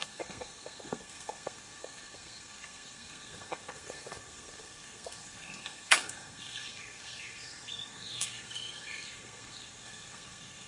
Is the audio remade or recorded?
remade